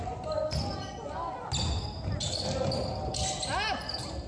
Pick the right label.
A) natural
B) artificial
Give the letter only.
A